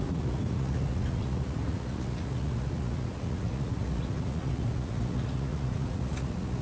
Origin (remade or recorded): remade